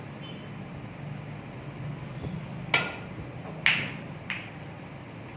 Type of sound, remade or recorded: recorded